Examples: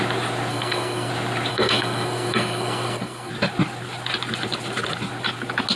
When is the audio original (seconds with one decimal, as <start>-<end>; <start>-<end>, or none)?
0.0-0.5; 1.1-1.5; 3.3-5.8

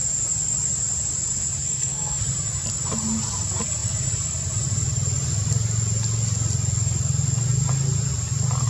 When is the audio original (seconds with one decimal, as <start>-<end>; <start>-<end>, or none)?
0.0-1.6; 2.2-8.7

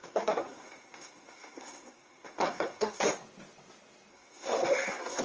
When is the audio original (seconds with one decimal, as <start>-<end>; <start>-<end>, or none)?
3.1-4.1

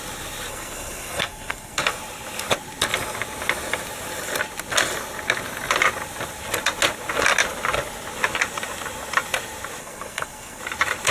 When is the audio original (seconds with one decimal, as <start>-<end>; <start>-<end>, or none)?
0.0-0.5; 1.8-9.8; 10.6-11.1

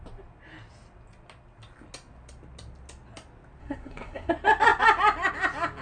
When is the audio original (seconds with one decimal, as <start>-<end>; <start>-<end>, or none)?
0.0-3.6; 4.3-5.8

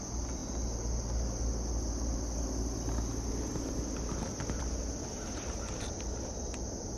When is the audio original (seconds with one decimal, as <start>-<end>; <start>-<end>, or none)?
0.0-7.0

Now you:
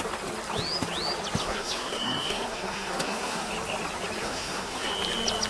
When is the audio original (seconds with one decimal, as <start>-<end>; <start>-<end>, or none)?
0.0-1.4; 3.5-4.2; 4.9-5.5